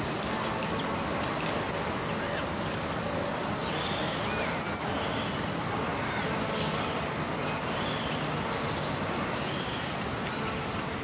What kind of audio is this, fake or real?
real